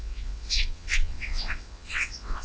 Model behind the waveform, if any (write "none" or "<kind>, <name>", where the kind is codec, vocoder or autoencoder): vocoder, WaveNeXt